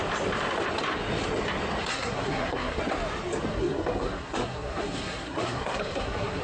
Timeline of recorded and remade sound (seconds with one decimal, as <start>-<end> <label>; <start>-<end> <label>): 0.0-1.8 recorded; 1.8-2.8 remade; 2.8-3.5 recorded; 3.5-6.4 remade